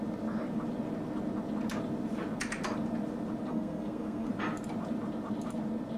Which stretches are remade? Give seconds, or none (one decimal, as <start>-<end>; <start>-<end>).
3.5-4.3